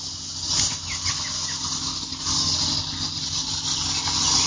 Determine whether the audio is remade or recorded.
recorded